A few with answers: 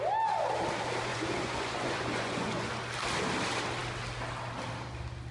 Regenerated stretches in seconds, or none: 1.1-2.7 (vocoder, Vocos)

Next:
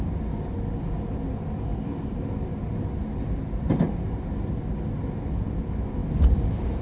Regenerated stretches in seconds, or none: none

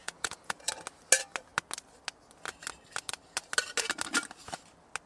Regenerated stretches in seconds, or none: 0.0-0.7 (vocoder, Vocos)

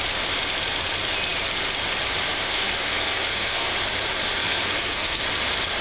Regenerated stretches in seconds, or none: 2.5-3.7 (codec, SNAC); 4.4-5.2

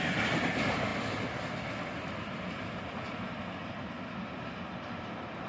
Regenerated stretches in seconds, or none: none

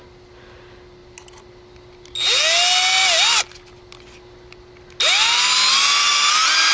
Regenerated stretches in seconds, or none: none

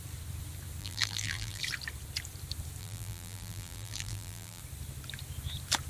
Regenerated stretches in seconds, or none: 0.8-1.6 (vocoder, BigVGAN v2); 2.8-4.6